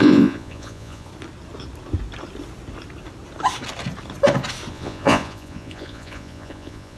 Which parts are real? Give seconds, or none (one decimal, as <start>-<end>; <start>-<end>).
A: 1.1-4.7